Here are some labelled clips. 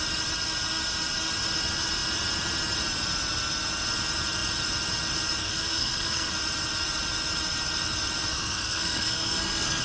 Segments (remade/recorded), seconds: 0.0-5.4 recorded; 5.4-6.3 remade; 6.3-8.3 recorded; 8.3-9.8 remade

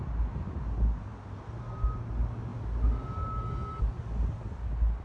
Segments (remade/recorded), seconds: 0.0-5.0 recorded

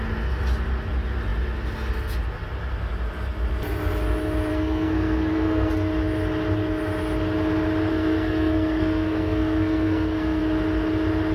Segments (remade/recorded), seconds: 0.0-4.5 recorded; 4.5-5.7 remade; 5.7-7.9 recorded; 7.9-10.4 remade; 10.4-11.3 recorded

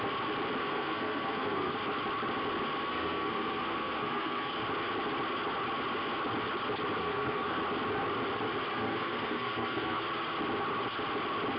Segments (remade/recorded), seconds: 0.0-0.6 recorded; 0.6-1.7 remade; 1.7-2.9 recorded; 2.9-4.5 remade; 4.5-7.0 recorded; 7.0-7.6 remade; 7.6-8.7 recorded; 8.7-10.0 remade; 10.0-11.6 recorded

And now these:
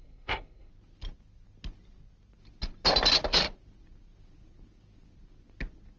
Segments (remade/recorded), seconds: 0.0-0.7 remade; 0.7-6.0 recorded

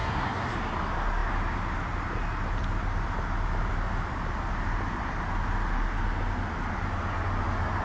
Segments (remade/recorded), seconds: 0.0-0.5 remade; 0.5-7.8 recorded

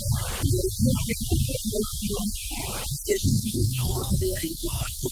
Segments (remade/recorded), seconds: 0.0-3.1 recorded; 3.1-5.1 remade